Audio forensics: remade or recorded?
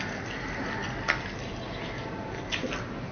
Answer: recorded